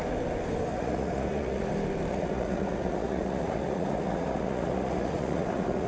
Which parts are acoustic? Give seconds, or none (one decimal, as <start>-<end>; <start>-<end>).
0.0-0.7; 1.7-2.1